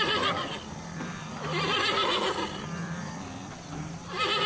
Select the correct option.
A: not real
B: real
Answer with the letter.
B